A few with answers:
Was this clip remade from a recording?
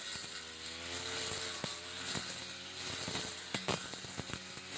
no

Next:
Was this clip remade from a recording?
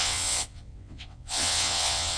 yes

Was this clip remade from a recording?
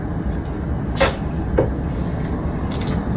no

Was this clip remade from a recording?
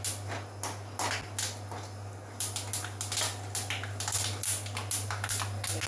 no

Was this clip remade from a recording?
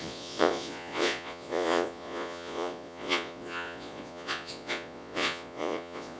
yes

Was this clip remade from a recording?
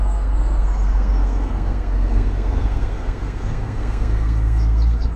yes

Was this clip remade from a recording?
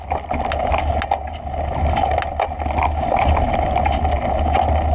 no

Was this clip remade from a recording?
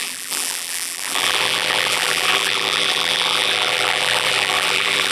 yes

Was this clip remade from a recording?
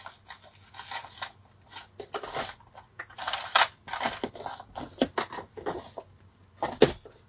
no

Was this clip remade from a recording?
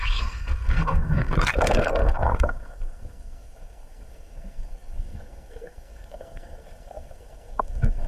yes